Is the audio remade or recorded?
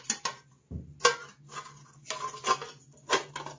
recorded